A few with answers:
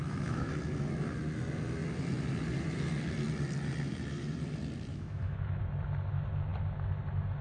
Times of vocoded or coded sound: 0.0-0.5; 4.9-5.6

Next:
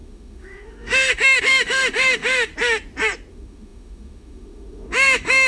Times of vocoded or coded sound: 0.0-2.5; 3.3-5.5